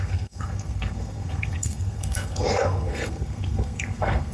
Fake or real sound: fake